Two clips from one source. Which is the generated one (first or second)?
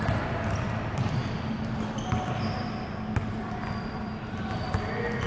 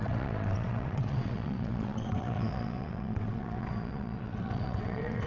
second